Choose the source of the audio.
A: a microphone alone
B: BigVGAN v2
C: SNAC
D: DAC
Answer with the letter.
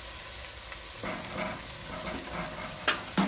A